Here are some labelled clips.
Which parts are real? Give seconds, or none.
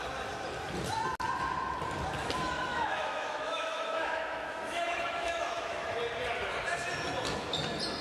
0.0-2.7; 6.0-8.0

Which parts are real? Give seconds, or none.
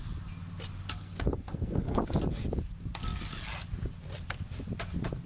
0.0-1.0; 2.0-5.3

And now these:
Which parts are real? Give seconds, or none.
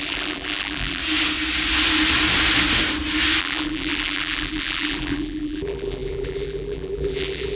1.0-3.4